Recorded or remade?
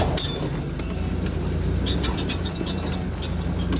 recorded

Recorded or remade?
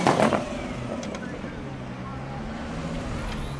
recorded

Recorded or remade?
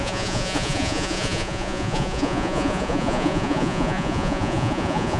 remade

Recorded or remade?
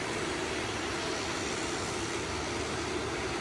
recorded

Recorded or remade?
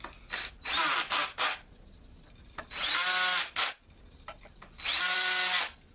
recorded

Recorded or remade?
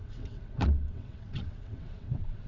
remade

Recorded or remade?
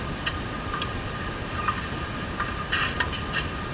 recorded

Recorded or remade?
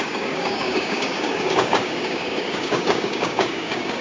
remade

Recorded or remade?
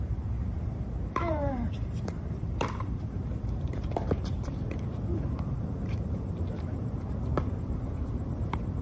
remade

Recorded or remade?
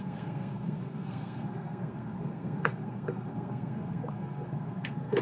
remade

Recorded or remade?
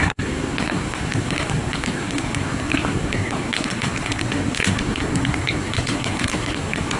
remade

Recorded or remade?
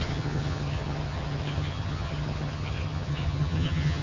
remade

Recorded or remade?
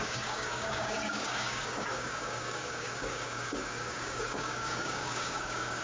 remade